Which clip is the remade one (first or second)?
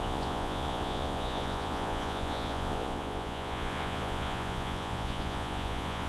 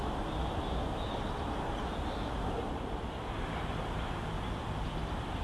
first